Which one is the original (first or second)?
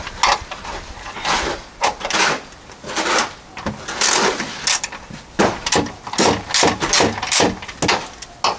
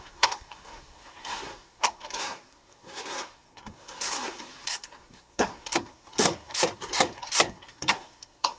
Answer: first